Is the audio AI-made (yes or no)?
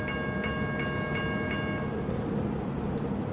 no